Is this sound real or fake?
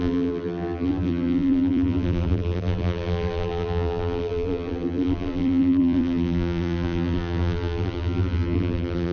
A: fake